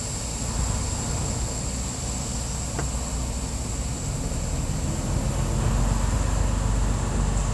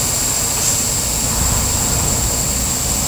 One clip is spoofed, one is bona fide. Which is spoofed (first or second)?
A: second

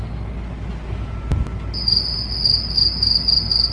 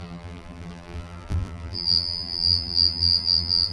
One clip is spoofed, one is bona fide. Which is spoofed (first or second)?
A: second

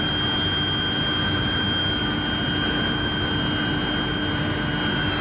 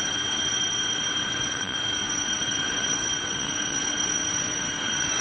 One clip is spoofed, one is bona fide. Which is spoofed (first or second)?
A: second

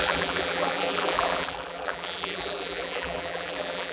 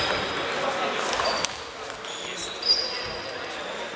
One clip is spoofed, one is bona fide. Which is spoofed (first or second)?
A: first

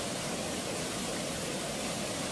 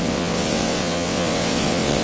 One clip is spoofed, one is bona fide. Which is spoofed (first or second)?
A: second